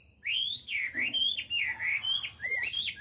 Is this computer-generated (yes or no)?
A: no